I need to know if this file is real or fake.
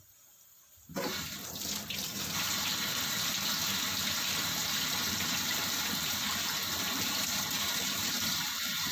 fake